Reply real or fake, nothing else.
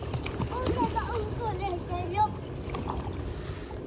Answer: real